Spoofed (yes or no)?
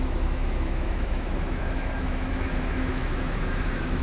yes